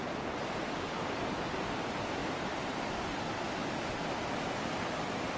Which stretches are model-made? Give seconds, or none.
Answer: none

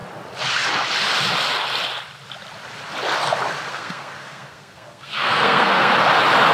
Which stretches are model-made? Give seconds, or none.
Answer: 3.7-5.9 (codec, SNAC)

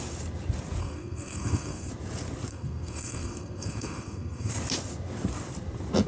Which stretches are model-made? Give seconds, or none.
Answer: 0.8-1.9 (codec, SNAC); 2.5-4.5